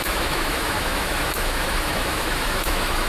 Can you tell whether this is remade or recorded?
remade